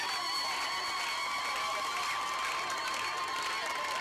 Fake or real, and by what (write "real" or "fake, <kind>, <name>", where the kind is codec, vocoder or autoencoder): real